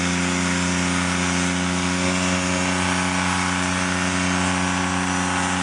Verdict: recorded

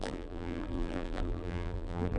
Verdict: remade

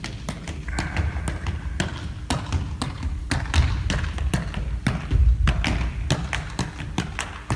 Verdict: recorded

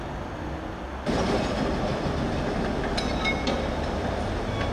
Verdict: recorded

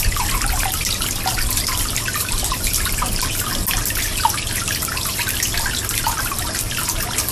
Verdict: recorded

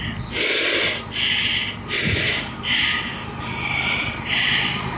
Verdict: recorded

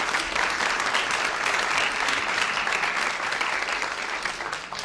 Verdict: recorded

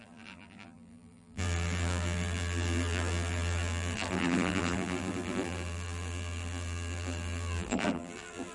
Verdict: remade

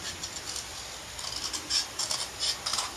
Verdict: recorded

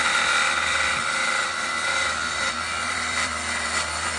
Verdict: remade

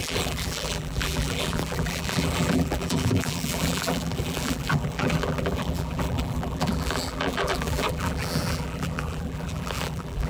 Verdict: remade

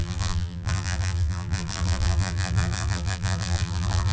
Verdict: remade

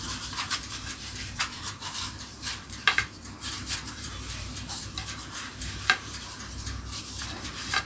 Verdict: remade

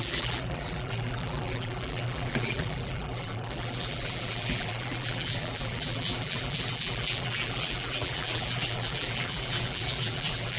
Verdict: remade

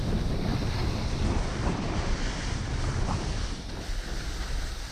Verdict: recorded